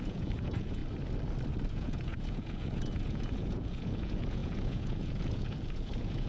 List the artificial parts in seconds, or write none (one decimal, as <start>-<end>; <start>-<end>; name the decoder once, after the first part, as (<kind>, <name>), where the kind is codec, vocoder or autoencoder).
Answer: 0.0-0.8 (vocoder, Vocos); 1.7-6.3